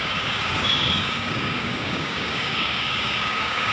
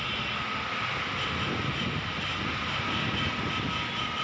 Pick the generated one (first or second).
first